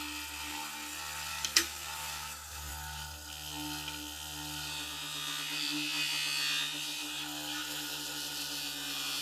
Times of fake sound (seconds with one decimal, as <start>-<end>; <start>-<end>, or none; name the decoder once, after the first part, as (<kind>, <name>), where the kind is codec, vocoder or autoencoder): 1.3-2.7 (codec, DAC)